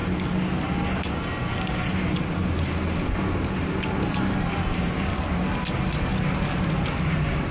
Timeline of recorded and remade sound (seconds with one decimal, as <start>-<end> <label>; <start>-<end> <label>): 0.0-7.5 recorded

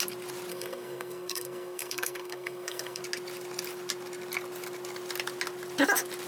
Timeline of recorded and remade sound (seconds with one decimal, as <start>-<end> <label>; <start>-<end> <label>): 0.0-0.5 recorded; 0.5-3.0 remade; 3.0-6.3 recorded

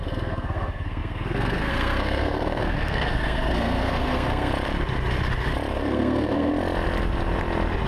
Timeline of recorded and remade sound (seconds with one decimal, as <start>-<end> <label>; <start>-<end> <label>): 0.0-4.5 remade; 4.5-5.7 recorded; 5.7-6.5 remade; 6.5-7.9 recorded

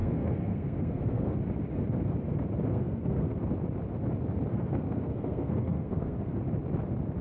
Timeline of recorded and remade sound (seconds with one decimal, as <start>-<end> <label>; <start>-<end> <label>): 0.0-1.3 remade; 1.3-2.7 recorded; 2.7-3.4 remade; 3.4-4.5 recorded; 4.5-6.4 remade; 6.4-7.2 recorded

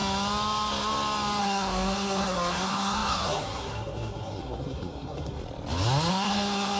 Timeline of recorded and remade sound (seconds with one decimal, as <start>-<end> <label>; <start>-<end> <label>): 0.0-1.4 recorded; 1.4-5.4 remade; 5.4-6.1 recorded; 6.1-6.8 remade

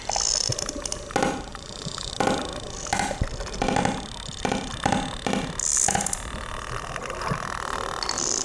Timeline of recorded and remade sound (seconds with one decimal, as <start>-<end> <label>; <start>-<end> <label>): 0.0-1.5 recorded; 1.5-2.1 remade; 2.1-8.4 recorded

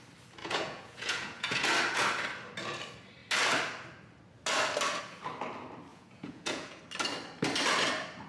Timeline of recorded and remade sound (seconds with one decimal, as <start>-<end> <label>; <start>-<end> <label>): 0.0-0.4 recorded; 0.4-1.6 remade; 1.6-5.9 recorded; 5.9-6.8 remade; 6.8-8.3 recorded

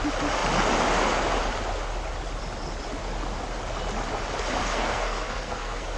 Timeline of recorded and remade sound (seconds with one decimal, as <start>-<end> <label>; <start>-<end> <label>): 0.0-4.6 recorded; 4.6-6.0 remade